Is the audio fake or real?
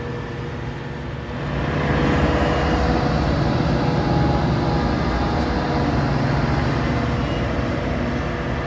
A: real